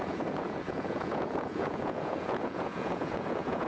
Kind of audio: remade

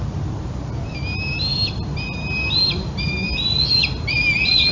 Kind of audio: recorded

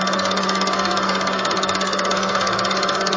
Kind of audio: remade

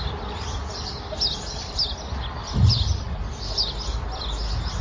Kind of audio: recorded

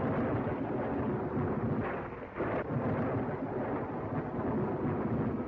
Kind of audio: recorded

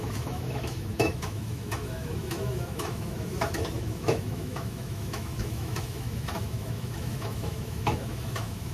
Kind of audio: remade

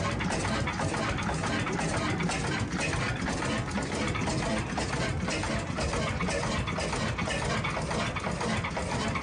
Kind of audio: recorded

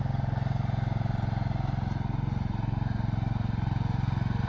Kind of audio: recorded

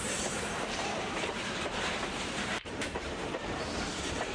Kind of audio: remade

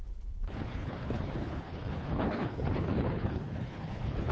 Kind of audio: remade